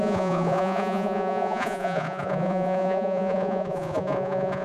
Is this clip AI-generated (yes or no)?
yes